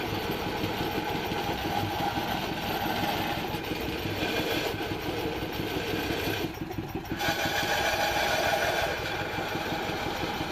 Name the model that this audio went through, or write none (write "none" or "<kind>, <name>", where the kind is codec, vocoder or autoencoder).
none